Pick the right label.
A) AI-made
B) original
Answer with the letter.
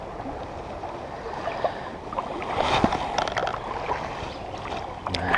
B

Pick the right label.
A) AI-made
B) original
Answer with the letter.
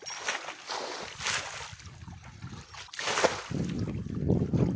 A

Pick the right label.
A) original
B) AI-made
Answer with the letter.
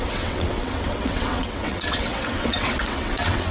B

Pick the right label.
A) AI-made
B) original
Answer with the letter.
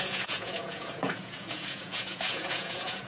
A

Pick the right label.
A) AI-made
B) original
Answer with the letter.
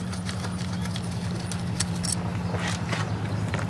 B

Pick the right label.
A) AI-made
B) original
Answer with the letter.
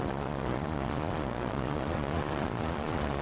A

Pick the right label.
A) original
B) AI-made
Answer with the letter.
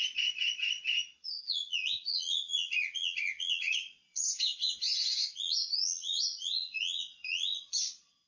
B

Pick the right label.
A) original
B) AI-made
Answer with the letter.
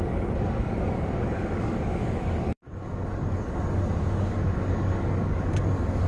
B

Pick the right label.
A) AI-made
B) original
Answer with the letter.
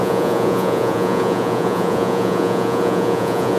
A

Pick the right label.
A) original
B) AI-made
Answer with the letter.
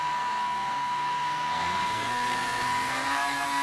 B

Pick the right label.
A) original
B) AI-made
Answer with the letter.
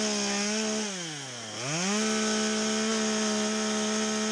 A